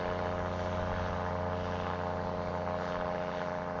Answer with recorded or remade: recorded